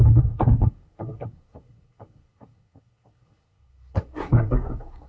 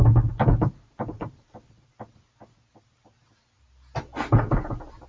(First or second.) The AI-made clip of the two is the first